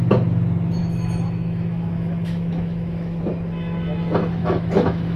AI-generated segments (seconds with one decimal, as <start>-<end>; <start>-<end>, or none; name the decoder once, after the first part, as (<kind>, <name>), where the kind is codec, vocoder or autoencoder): 0.8-3.2 (autoencoder, DAC-VAE); 4.4-5.2